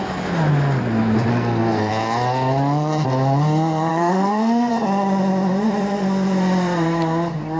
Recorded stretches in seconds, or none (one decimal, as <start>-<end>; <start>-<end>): 0.0-1.3; 1.9-3.9; 4.7-7.6